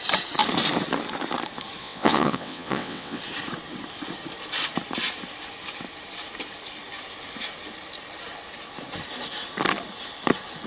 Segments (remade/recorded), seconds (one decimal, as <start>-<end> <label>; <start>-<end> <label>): 0.0-1.8 recorded; 1.8-3.2 remade; 3.2-10.7 recorded